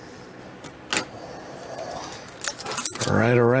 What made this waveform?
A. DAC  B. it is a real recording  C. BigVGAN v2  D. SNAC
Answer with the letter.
B